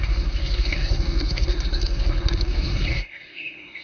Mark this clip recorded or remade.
remade